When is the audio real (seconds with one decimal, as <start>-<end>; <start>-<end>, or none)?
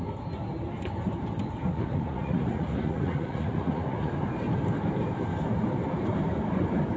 0.0-1.7; 4.1-7.0